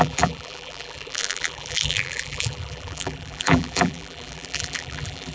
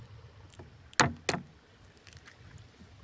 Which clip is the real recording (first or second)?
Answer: second